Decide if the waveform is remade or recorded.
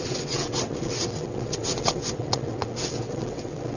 remade